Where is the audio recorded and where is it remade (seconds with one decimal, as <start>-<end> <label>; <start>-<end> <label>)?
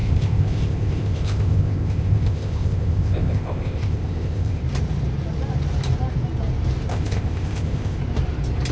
0.0-4.6 remade; 4.6-6.9 recorded; 6.9-8.0 remade; 8.0-8.7 recorded